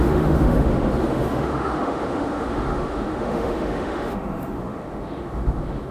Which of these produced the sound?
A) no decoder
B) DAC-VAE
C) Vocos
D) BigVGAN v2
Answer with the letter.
B